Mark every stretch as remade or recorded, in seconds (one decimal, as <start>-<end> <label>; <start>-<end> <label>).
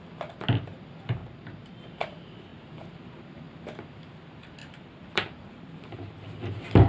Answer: 0.0-1.2 recorded; 1.2-1.8 remade; 1.8-4.6 recorded; 4.6-6.1 remade; 6.1-6.9 recorded